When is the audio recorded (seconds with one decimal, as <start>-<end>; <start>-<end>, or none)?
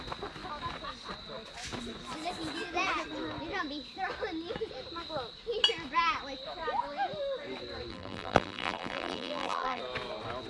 0.0-7.9; 9.8-10.5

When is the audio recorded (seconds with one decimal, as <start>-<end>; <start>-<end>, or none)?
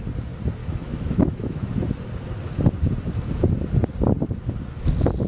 0.0-0.6; 1.7-5.3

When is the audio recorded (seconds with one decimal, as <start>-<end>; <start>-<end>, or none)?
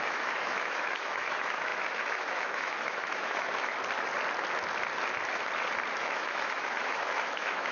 3.7-6.0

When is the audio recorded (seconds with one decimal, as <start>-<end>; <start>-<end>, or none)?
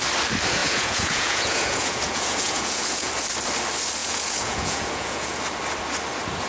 0.0-0.6; 3.1-4.0; 5.4-6.5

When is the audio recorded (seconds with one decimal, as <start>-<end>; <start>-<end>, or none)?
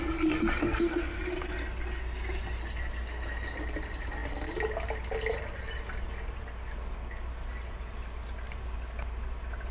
0.0-0.6; 1.2-9.7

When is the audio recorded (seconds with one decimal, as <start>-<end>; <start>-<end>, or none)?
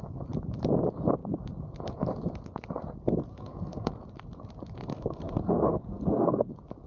0.0-3.3; 3.9-4.9; 6.5-6.9